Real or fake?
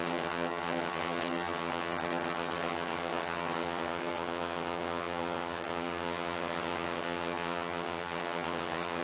fake